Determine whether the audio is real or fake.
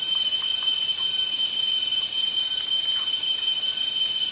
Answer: fake